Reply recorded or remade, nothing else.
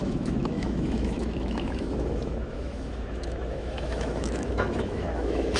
remade